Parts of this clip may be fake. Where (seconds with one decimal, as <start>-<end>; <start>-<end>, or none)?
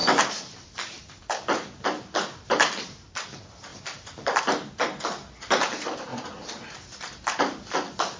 0.0-1.2; 3.7-4.4; 6.1-6.6